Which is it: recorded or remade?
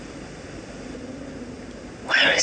recorded